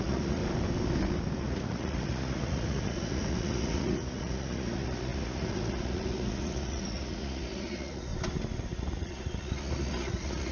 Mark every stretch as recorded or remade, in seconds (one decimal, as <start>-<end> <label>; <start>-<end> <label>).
0.0-0.4 remade; 0.4-1.4 recorded; 1.4-8.1 remade; 8.1-8.6 recorded; 8.6-10.5 remade